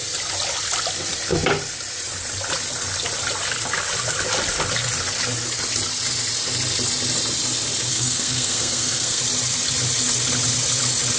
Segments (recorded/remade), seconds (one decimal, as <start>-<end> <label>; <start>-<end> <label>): 0.0-7.9 recorded; 7.9-9.2 remade; 9.2-11.2 recorded